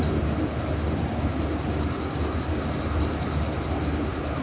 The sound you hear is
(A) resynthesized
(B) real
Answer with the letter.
B